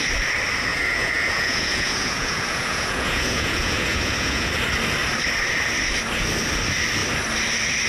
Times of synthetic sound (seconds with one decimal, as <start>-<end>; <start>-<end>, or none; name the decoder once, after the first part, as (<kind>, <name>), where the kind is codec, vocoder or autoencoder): 0.7-4.5 (vocoder, Vocos)